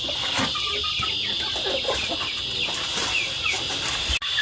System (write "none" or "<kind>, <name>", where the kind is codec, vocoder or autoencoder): none